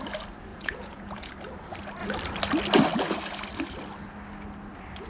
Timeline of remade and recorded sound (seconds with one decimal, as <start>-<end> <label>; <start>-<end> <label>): 0.0-0.5 recorded; 0.5-1.3 remade; 1.3-5.1 recorded

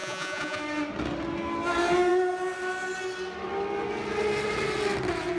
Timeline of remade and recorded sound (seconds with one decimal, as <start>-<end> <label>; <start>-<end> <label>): 0.0-0.6 remade; 0.6-5.4 recorded

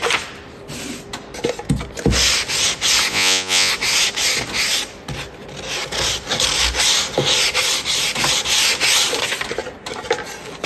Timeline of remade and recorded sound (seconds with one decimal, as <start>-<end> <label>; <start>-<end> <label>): 0.0-3.1 recorded; 3.1-3.7 remade; 3.7-10.7 recorded